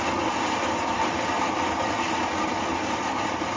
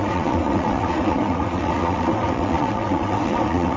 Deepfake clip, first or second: second